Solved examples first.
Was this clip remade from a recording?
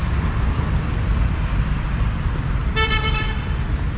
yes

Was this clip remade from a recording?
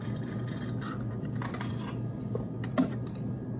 yes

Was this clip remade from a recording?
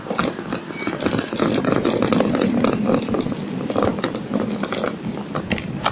no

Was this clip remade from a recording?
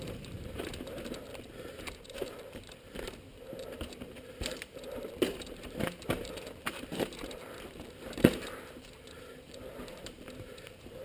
yes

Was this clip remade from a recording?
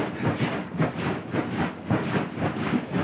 no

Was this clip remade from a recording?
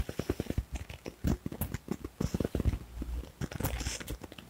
no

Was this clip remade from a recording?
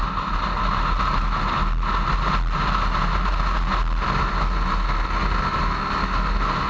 no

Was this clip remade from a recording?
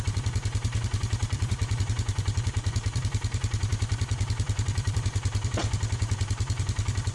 yes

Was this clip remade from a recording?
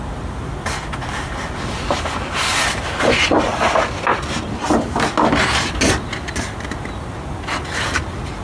no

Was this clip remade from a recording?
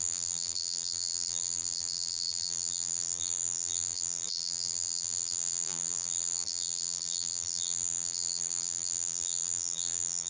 yes